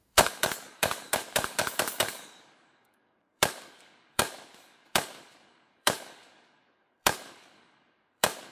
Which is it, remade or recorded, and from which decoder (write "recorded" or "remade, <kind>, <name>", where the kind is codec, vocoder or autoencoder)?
remade, codec, DAC